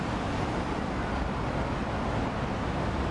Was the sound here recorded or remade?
recorded